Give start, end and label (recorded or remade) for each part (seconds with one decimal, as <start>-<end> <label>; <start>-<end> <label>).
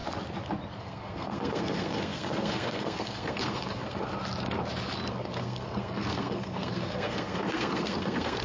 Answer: 0.0-0.8 recorded; 0.8-4.1 remade; 4.1-5.1 recorded; 5.1-8.4 remade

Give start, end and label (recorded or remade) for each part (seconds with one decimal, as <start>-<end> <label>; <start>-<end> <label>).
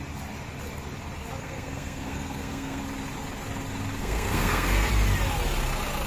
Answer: 0.0-1.4 recorded; 1.4-2.8 remade; 2.8-4.0 recorded; 4.0-4.9 remade; 4.9-6.1 recorded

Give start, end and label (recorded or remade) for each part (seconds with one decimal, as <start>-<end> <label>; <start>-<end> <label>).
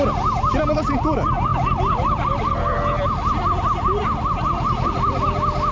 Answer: 0.0-5.7 recorded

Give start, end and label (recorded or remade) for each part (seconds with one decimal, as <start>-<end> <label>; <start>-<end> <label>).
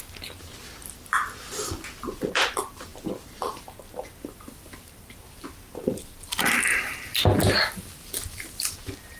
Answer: 0.0-9.2 recorded